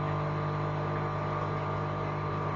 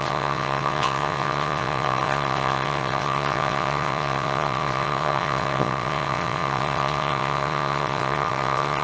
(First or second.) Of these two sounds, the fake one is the second